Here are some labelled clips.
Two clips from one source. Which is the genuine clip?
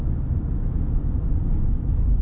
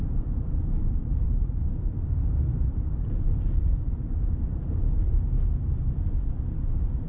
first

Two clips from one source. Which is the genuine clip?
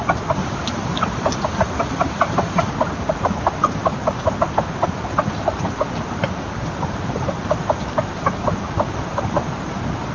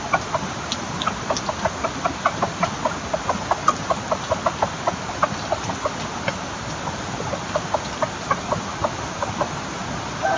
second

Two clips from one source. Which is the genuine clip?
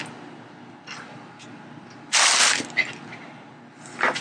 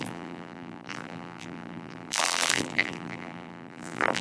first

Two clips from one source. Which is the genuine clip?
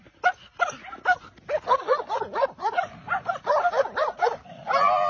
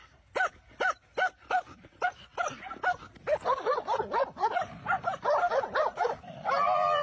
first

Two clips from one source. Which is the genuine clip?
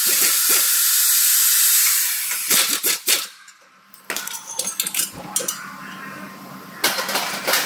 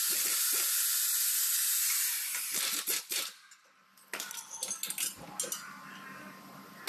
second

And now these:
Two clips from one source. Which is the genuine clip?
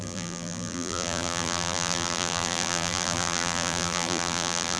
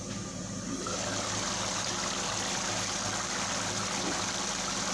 second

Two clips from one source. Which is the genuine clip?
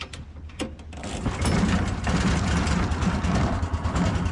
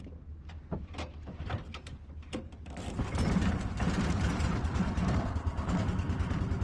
first